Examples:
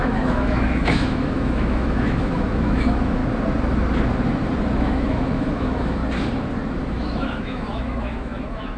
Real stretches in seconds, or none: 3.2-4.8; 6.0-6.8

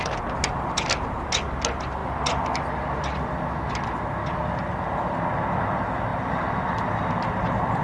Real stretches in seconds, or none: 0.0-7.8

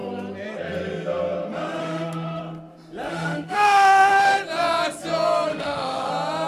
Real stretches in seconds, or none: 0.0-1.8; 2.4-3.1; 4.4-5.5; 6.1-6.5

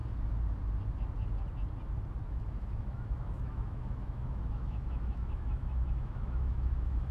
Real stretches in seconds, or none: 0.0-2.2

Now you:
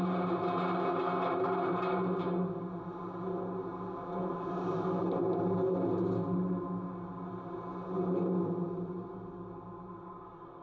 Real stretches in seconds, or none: 0.0-10.6

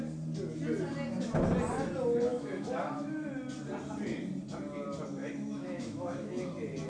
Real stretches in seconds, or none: 0.0-2.3; 3.3-5.2; 6.5-6.9

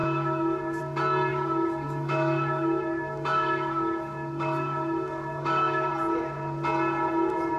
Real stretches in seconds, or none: 0.8-1.3; 5.9-7.6